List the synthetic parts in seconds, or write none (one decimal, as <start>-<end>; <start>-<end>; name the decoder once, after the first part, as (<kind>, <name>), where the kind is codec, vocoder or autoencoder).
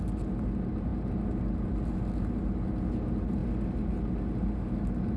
none